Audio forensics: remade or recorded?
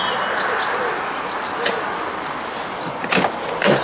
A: recorded